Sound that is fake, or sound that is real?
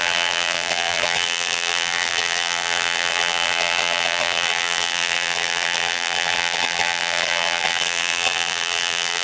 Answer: fake